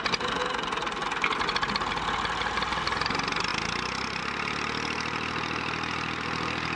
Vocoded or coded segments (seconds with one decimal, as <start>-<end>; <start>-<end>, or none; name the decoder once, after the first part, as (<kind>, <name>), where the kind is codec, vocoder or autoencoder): none